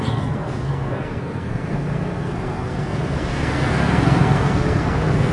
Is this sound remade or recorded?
remade